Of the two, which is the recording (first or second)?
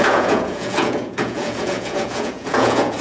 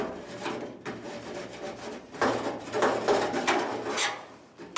second